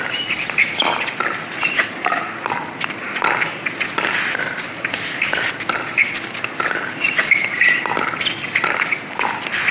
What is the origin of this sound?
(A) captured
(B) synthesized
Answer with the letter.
A